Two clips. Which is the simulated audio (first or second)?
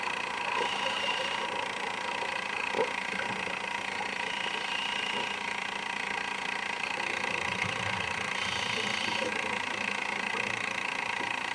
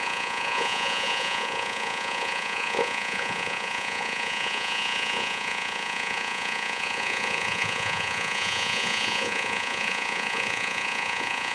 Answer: second